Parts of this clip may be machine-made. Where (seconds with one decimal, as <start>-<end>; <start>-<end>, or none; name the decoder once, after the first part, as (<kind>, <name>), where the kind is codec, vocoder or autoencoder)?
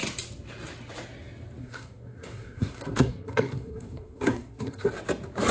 1.6-4.9 (codec, SNAC)